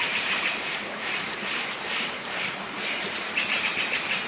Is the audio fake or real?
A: fake